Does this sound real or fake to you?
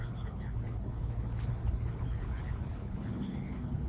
fake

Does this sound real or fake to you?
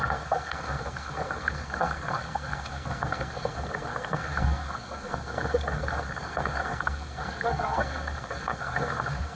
fake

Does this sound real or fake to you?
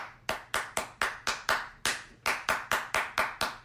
real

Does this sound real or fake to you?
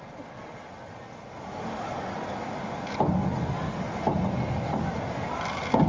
real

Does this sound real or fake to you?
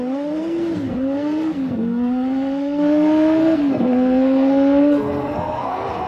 fake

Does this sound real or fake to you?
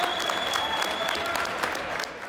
real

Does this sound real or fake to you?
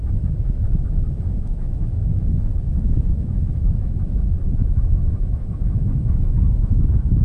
fake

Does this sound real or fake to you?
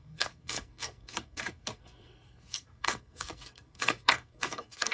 fake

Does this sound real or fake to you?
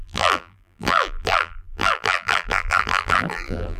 fake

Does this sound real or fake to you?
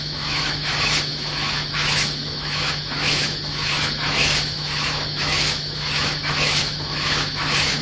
fake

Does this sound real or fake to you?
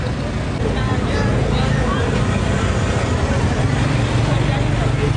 real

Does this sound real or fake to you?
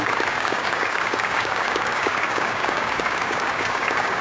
fake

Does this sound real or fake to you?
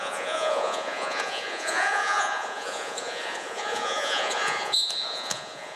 fake